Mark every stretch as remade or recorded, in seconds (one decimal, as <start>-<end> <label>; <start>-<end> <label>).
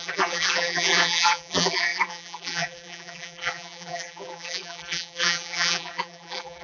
0.0-6.6 remade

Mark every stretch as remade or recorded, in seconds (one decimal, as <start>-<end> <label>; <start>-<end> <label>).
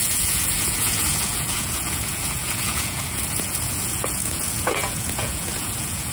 0.0-6.1 remade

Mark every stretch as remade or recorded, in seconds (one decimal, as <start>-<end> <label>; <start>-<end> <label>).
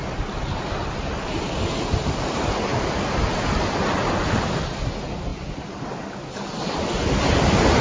0.0-7.8 recorded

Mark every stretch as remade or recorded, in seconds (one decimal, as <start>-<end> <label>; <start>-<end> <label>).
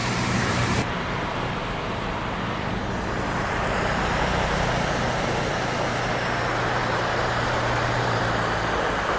0.0-1.6 remade; 1.6-6.8 recorded; 6.8-8.2 remade; 8.2-9.2 recorded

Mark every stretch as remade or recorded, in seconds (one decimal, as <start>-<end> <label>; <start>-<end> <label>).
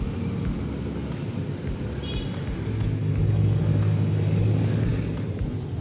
0.0-3.0 recorded; 3.0-4.4 remade; 4.4-5.8 recorded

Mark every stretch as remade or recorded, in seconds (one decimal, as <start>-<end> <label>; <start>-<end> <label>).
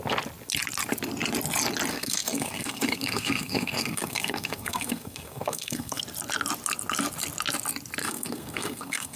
0.0-1.9 recorded; 1.9-6.0 remade; 6.0-8.0 recorded; 8.0-9.2 remade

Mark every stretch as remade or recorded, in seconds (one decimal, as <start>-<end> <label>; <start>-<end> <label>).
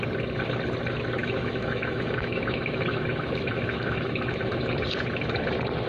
0.0-1.2 recorded; 1.2-4.7 remade; 4.7-5.9 recorded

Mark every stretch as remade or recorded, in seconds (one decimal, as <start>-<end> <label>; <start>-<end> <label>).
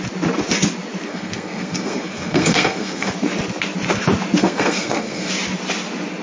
0.0-1.1 recorded; 1.1-3.1 remade; 3.1-4.4 recorded; 4.4-5.3 remade; 5.3-6.2 recorded